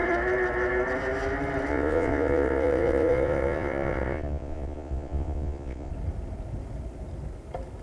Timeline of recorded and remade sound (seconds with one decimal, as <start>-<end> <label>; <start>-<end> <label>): 0.0-1.7 recorded; 1.7-5.9 remade; 5.9-7.8 recorded